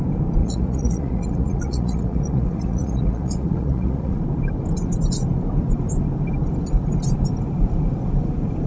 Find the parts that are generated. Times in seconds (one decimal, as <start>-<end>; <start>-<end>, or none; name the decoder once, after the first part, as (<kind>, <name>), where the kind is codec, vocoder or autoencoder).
0.4-4.2 (vocoder, Vocos)